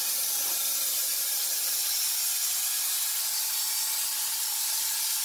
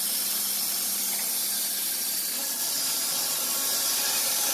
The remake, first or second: second